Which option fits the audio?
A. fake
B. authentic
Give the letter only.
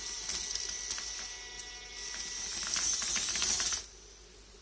B